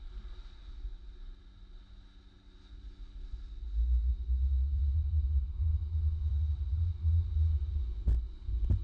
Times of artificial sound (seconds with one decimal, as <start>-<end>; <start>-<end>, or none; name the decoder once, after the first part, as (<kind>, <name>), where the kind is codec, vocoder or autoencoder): 4.1-5.7 (vocoder, BigVGAN v2); 6.3-7.0